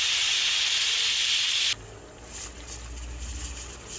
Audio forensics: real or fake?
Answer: real